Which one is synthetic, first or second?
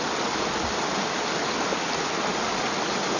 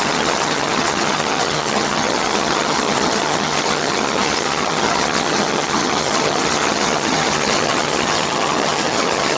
second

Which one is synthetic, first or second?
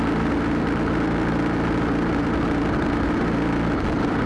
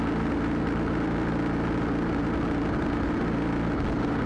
first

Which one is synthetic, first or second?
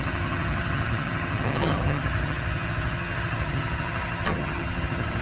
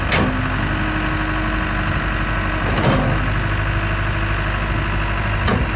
first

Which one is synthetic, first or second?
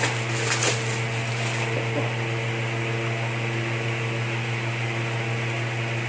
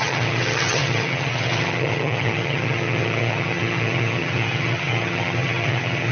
second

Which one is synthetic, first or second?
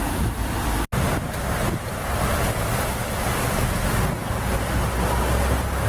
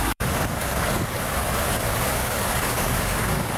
second